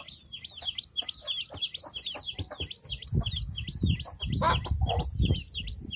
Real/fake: real